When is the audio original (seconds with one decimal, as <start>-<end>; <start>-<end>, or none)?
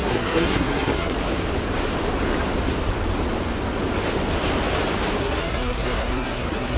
1.1-5.2